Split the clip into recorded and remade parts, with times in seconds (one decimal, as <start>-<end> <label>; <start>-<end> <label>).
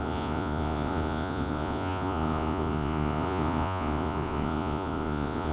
0.0-5.5 remade